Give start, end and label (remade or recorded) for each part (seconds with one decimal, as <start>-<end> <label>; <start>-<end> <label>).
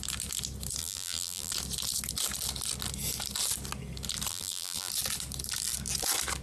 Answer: 0.0-0.8 recorded; 0.8-1.5 remade; 1.5-4.3 recorded; 4.3-4.9 remade; 4.9-6.4 recorded